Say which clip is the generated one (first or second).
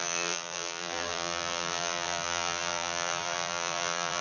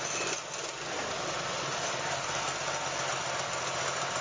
first